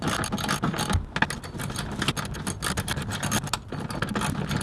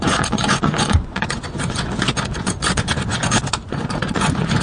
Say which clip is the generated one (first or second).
second